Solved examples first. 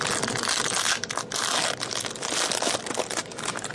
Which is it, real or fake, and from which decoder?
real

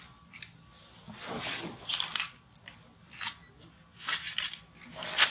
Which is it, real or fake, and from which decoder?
real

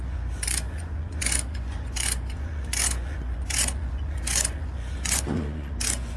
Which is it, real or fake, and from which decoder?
fake, vocoder, Vocos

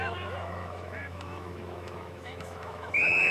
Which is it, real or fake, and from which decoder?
fake, autoencoder, DAC-VAE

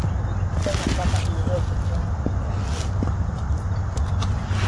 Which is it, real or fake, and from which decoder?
real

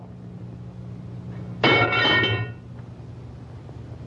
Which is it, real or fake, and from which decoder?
real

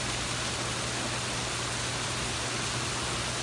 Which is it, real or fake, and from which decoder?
real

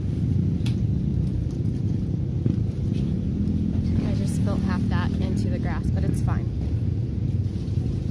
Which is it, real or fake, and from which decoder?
real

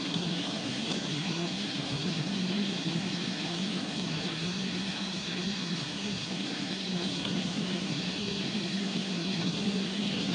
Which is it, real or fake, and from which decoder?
fake, codec, SNAC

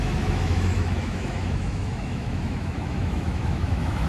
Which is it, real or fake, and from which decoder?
fake, autoencoder, DAC-VAE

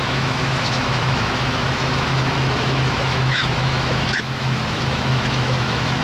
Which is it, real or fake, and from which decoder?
fake, autoencoder, DAC-VAE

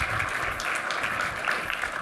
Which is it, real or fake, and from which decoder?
real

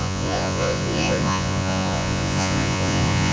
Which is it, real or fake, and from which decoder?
fake, vocoder, Vocos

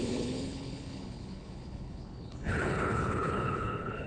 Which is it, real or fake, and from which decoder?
fake, codec, HILCodec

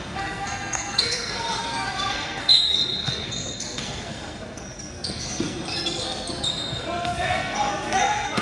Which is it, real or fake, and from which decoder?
fake, codec, SNAC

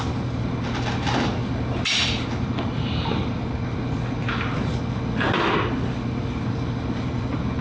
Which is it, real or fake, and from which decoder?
real